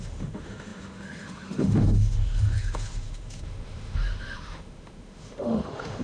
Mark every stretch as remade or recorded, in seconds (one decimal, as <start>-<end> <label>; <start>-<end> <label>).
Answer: 0.0-6.0 remade